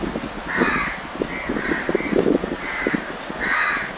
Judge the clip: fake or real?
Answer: real